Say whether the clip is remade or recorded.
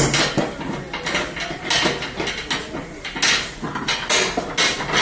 recorded